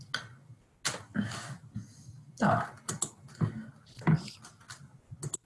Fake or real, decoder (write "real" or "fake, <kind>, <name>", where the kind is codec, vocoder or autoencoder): real